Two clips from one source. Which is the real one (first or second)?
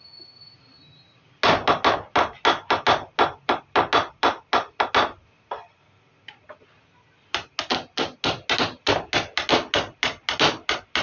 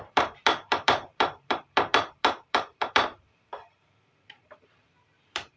first